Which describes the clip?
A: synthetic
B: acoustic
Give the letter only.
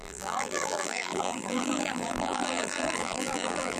A